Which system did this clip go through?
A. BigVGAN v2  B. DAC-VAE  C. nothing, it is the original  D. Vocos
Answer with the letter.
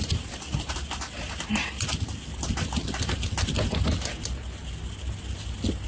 C